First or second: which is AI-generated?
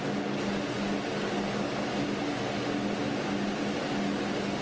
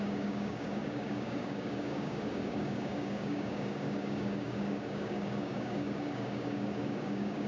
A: second